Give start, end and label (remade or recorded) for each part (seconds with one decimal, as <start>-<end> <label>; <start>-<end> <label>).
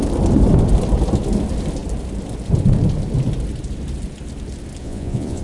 0.0-4.8 recorded; 4.8-5.4 remade